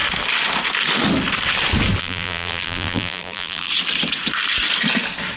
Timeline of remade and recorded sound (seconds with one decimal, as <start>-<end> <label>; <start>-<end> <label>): 0.0-2.0 recorded; 2.0-3.7 remade; 3.7-5.4 recorded